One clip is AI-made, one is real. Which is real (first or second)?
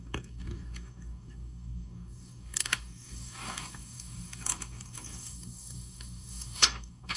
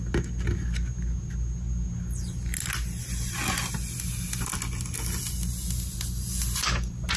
second